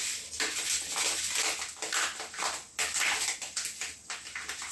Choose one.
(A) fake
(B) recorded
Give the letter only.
B